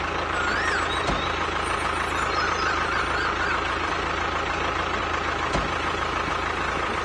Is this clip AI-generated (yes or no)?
no